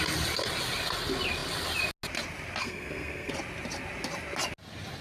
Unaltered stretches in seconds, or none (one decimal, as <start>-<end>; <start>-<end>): 0.0-2.6; 3.3-5.0